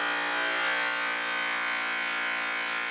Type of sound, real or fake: real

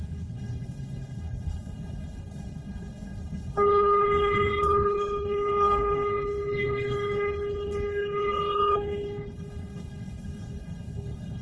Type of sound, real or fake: fake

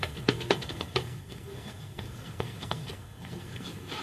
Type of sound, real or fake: fake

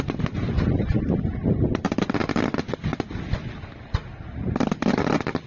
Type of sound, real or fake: real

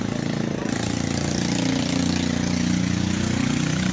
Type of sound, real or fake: real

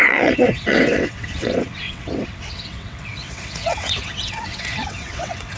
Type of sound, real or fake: fake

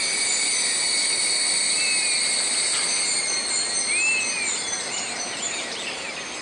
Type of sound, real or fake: real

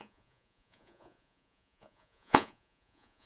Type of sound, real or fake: fake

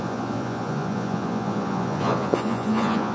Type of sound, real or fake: fake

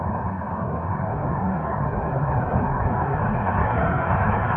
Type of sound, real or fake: fake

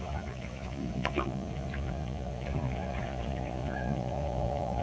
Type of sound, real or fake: fake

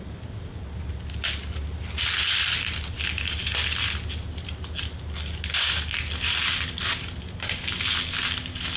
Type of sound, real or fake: real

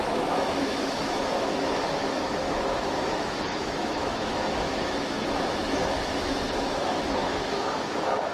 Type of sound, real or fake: fake